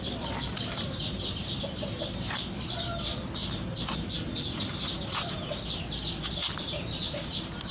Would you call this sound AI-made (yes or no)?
yes